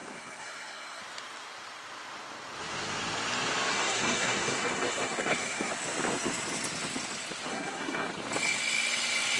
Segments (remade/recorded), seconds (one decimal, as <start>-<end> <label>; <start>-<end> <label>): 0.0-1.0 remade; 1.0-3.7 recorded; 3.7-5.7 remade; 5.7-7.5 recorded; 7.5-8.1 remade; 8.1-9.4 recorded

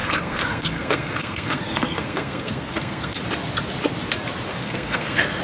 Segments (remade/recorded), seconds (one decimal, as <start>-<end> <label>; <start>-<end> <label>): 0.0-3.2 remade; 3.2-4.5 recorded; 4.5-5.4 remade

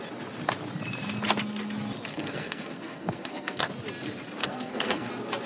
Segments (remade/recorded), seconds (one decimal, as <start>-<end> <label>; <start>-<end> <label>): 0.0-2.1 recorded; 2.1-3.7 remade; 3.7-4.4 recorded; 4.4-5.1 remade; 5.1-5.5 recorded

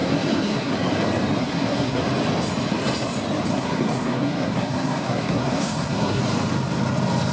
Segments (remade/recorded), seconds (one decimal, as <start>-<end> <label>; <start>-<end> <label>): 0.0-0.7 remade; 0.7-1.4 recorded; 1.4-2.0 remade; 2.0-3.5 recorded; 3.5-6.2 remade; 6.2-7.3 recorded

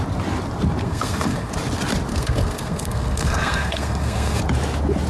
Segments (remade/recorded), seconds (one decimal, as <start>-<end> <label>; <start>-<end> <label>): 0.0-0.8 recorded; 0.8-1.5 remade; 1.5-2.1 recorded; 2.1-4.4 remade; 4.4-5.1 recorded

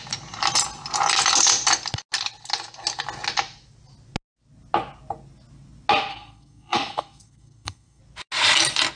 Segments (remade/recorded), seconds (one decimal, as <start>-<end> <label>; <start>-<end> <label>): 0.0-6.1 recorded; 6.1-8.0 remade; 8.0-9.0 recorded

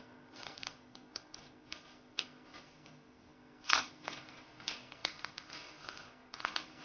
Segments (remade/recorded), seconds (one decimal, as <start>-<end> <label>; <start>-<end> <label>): 0.0-6.8 remade

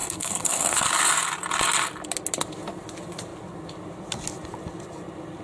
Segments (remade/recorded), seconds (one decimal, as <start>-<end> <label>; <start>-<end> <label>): 0.0-0.9 remade; 0.9-5.4 recorded